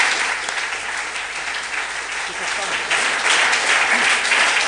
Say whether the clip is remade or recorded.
recorded